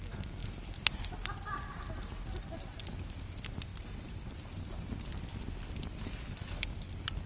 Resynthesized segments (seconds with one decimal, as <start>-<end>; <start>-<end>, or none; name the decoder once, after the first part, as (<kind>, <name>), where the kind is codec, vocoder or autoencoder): 3.7-4.3 (vocoder, BigVGAN v2)